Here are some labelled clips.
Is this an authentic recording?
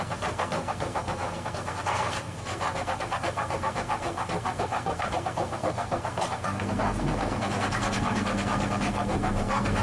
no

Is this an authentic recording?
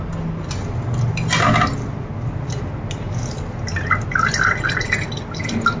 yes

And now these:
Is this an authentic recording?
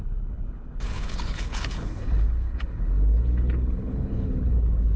no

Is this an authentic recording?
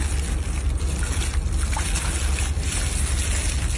yes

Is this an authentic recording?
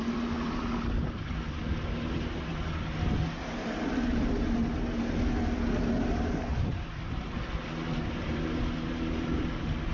yes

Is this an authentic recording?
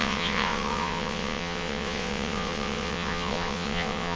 no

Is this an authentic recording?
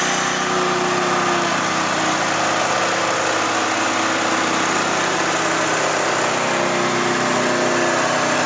yes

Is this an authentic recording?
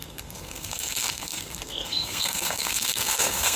no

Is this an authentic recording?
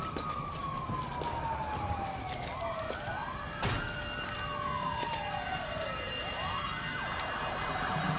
yes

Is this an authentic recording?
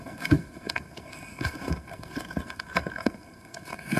no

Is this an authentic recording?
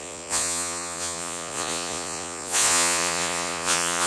no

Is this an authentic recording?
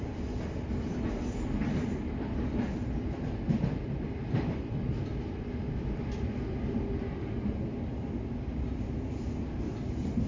yes